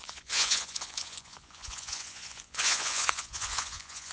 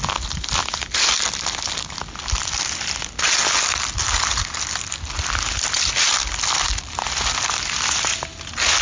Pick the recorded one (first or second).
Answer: second